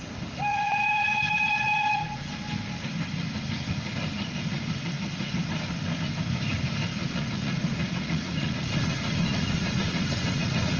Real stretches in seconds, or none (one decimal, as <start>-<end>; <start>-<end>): 0.0-0.5; 2.3-7.0